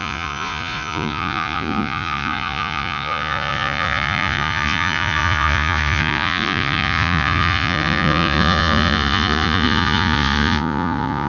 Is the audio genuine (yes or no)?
no